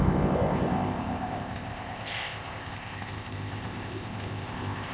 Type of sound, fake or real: fake